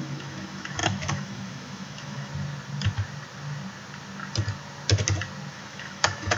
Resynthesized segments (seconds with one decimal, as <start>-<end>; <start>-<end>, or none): 0.0-2.3; 5.5-6.4